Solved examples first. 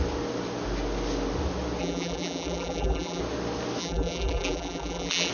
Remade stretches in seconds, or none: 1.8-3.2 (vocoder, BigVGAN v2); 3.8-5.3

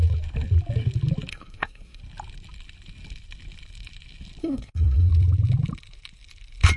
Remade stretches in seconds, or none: 1.3-2.0 (codec, SNAC); 4.4-5.1

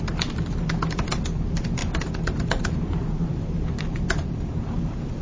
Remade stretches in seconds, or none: 1.8-5.2 (vocoder, BigVGAN v2)

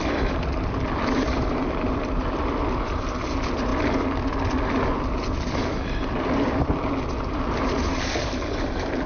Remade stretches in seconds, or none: 0.0-3.7 (vocoder, BigVGAN v2); 4.7-9.1